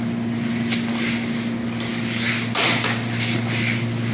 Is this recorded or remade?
recorded